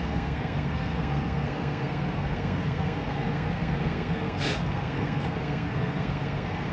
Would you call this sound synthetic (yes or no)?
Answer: yes